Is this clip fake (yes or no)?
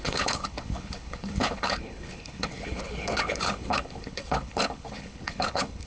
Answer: yes